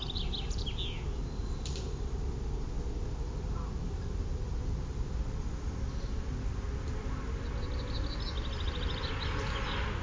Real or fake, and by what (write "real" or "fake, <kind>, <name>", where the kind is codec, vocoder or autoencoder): real